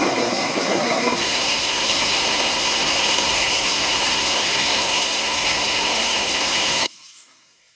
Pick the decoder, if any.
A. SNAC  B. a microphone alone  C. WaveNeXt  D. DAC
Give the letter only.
A